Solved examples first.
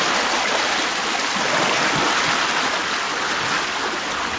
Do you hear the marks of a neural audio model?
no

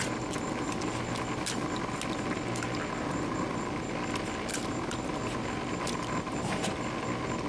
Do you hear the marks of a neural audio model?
no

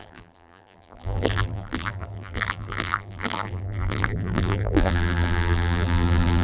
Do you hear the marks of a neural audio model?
yes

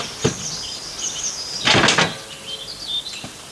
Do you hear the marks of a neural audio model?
no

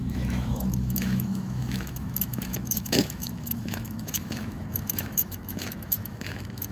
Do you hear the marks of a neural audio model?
yes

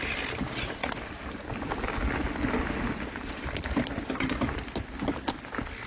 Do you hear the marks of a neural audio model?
no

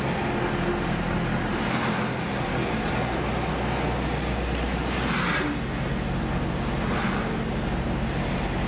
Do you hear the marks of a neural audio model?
no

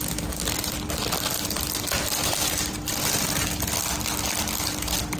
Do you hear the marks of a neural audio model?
no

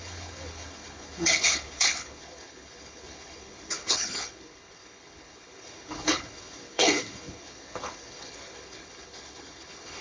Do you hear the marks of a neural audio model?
yes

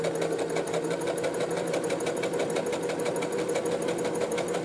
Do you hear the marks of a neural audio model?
no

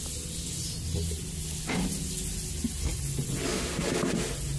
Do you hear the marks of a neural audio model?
no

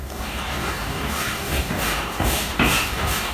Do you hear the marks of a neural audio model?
yes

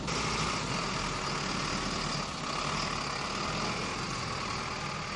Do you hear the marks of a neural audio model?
no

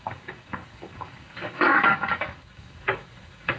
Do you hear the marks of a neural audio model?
yes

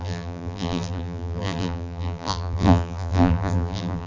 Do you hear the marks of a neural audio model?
yes